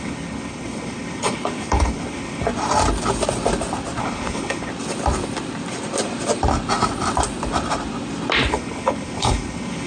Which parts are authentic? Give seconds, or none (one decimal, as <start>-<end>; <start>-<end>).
2.5-4.0; 4.7-8.5